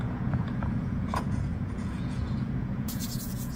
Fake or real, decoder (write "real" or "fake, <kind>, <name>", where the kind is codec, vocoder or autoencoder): fake, vocoder, Vocos